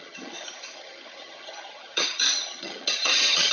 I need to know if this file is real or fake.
fake